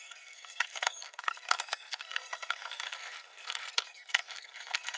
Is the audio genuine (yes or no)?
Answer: no